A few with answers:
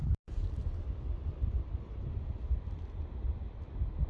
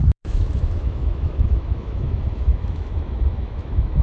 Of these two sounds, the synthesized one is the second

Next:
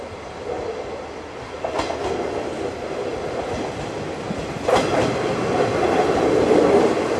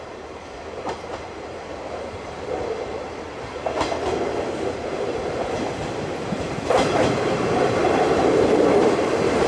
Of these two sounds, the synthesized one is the second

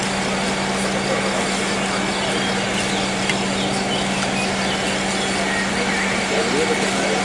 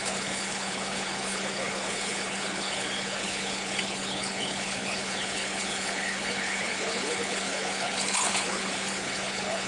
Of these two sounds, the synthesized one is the second